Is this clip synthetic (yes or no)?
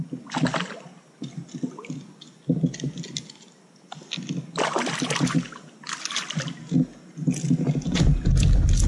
no